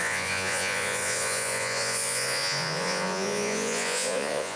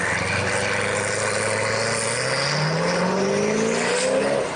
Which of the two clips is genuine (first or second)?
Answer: second